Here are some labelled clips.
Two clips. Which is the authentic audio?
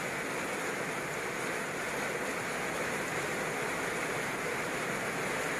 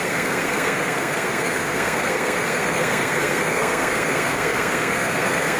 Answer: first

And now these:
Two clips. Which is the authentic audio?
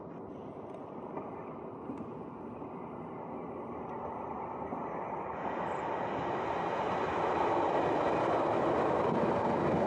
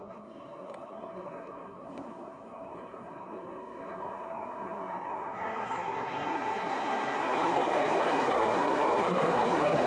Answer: first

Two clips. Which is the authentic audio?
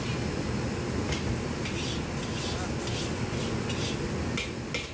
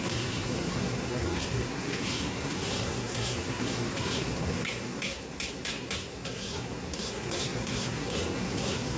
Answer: first